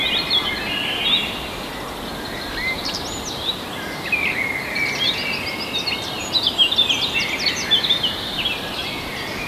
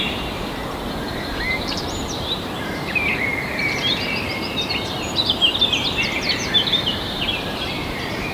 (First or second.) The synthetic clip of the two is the second